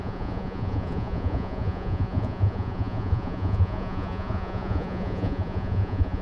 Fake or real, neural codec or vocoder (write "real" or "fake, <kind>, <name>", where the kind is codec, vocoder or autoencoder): fake, vocoder, Vocos